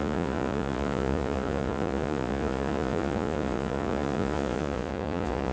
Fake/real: fake